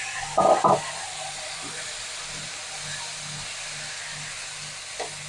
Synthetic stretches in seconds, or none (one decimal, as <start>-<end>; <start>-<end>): 0.6-2.1